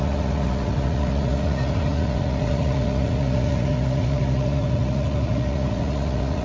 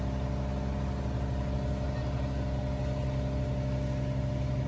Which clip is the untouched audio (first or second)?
second